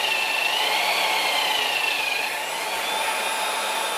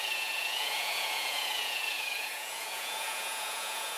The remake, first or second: second